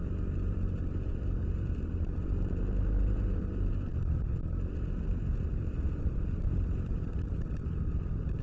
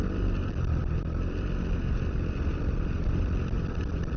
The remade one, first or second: first